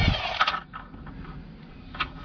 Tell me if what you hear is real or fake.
real